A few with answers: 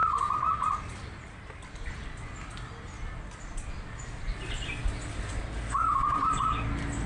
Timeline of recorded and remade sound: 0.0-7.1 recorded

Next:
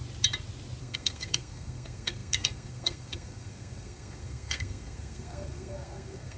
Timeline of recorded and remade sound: 0.0-0.8 recorded; 0.8-6.4 remade

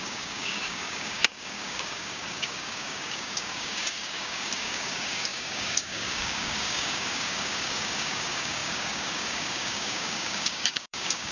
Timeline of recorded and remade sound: 0.0-11.3 remade

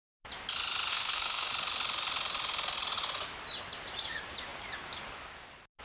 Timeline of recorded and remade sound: 0.0-0.9 recorded; 0.9-1.5 remade; 1.5-5.8 recorded

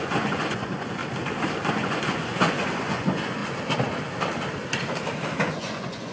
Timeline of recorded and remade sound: 0.0-1.0 remade; 1.0-1.7 recorded; 1.7-3.4 remade; 3.4-5.4 recorded; 5.4-6.1 remade

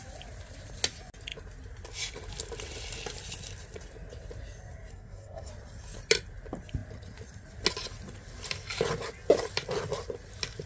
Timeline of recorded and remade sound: 0.0-4.9 recorded; 4.9-5.5 remade; 5.5-10.7 recorded

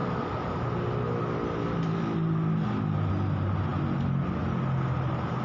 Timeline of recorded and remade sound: 0.0-5.4 recorded